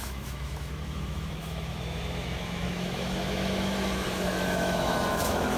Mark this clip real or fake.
fake